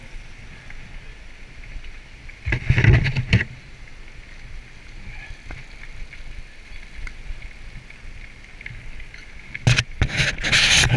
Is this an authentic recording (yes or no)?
yes